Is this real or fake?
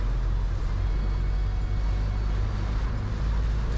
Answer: real